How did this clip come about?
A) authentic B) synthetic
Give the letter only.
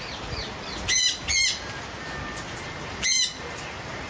A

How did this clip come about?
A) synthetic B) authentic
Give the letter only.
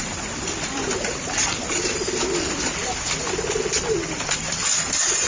A